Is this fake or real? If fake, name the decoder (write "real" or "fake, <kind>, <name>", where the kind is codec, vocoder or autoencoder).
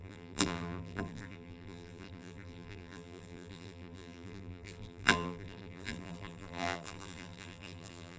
fake, vocoder, BigVGAN v2